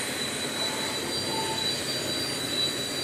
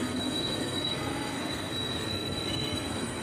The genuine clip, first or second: first